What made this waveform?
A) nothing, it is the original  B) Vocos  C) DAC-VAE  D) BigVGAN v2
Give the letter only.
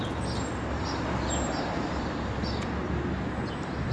A